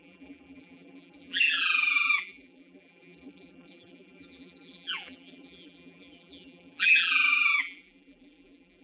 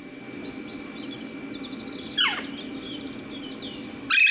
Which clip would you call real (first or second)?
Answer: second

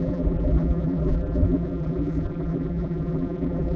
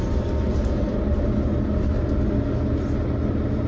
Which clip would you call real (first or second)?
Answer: second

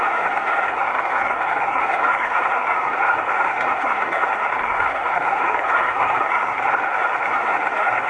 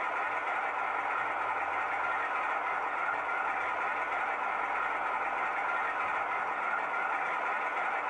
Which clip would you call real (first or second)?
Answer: second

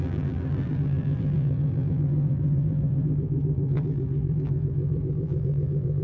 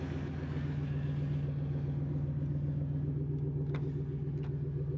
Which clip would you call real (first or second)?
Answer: second